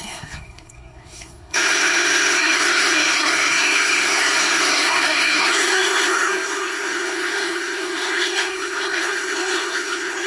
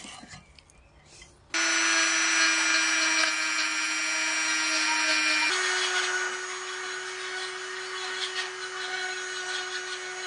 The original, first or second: second